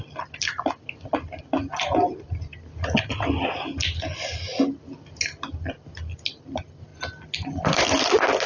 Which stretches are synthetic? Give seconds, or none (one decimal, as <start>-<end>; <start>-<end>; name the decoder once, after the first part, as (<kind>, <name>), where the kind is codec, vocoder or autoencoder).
none